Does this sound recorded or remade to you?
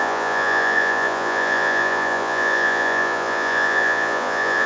remade